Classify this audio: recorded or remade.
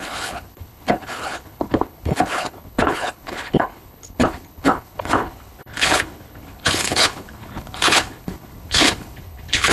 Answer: remade